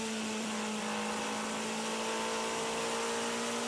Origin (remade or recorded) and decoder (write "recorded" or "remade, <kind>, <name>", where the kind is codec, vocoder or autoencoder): recorded